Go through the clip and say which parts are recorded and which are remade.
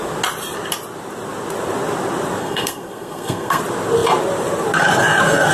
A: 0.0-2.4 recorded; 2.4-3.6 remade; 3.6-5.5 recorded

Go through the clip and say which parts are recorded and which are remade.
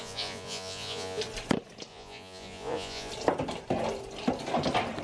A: 0.0-1.2 remade; 1.2-1.9 recorded; 1.9-3.1 remade; 3.1-5.0 recorded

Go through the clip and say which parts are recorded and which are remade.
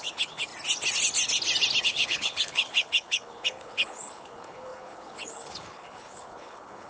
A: 0.0-0.5 remade; 0.5-1.8 recorded; 1.8-6.9 remade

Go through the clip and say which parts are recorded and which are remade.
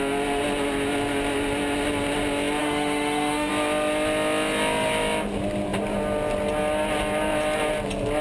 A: 0.0-2.6 recorded; 2.6-3.5 remade; 3.5-8.2 recorded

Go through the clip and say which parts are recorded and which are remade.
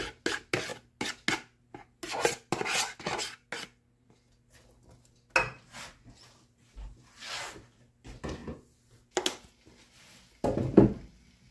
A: 0.0-11.5 recorded